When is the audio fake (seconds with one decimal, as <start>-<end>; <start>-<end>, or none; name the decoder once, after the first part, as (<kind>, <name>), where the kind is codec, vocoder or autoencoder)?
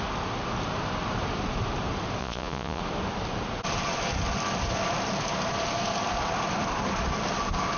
2.2-2.8 (vocoder, Vocos)